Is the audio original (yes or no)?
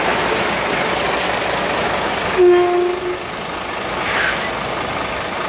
yes